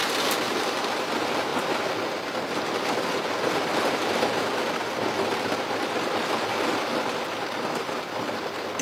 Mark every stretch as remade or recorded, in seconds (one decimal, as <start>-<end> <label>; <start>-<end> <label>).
0.0-8.8 recorded